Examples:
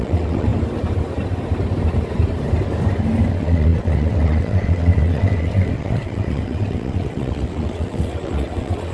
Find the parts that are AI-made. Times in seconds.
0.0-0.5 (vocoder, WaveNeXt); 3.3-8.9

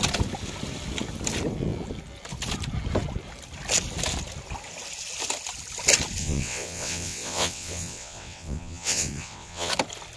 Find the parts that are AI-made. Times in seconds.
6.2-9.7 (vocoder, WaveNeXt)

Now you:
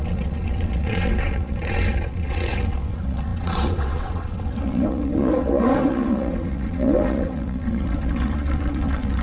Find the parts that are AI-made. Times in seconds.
0.0-9.2 (vocoder, WaveNeXt)